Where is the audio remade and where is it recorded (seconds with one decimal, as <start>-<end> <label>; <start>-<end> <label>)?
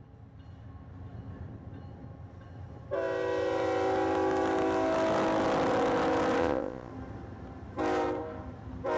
0.0-6.4 recorded; 6.4-6.9 remade; 6.9-9.0 recorded